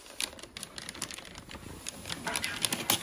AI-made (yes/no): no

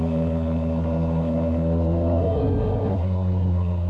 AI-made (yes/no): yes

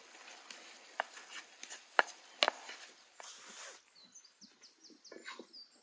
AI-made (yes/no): no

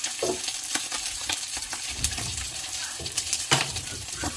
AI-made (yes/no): yes